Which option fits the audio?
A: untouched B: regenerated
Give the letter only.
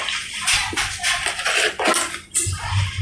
A